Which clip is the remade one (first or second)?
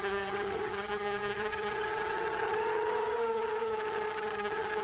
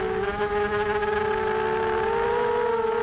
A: first